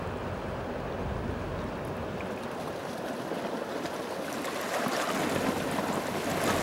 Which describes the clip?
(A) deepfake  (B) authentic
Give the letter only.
B